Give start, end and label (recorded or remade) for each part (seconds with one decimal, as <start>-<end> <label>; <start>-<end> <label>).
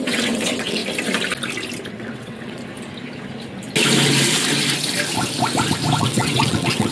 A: 0.0-0.8 remade; 0.8-1.9 recorded; 1.9-2.6 remade; 2.6-6.0 recorded; 6.0-6.9 remade